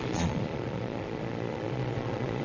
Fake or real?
fake